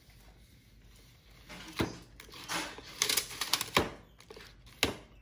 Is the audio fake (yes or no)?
no